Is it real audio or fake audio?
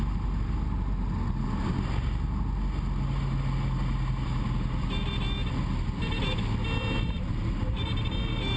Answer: real